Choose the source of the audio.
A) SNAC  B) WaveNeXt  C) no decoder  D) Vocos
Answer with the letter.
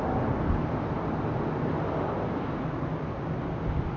C